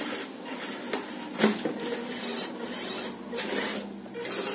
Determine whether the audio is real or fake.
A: real